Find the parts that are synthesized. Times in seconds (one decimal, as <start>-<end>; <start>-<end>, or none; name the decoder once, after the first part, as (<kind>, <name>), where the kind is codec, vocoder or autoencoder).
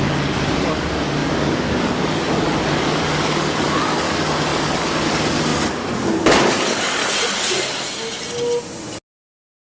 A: 0.0-7.0 (codec, DAC); 9.1-9.7